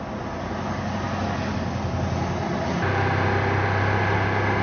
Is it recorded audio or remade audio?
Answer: recorded